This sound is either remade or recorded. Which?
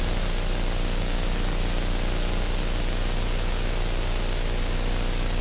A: recorded